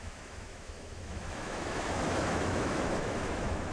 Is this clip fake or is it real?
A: fake